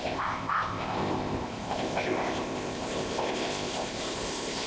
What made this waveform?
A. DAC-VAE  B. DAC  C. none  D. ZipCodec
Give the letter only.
D